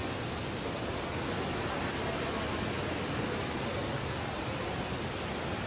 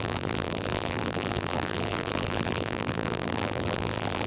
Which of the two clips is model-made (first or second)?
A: second